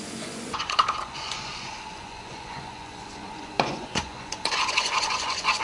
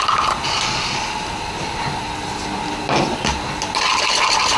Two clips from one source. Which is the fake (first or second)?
first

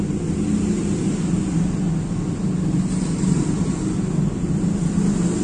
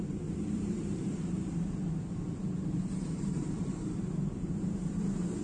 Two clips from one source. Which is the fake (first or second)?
second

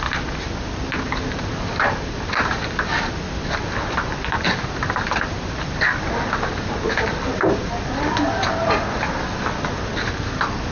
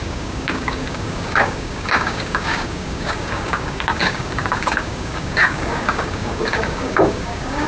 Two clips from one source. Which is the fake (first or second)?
second